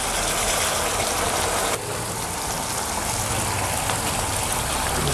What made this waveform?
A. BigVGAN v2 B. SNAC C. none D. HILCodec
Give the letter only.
C